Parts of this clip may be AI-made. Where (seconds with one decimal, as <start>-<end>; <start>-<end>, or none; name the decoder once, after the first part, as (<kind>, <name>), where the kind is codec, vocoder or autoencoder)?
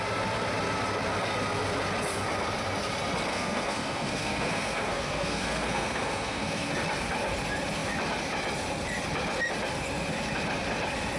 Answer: 3.3-6.7 (codec, SNAC)